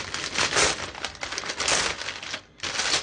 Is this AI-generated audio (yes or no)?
no